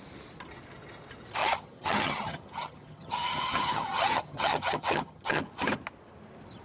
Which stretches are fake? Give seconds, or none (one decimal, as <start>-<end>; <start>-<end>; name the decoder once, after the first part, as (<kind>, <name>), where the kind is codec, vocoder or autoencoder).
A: 1.4-5.4 (vocoder, HiFi-GAN)